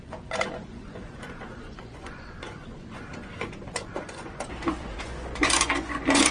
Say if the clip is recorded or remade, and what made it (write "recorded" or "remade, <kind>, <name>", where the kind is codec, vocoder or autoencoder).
remade, vocoder, Vocos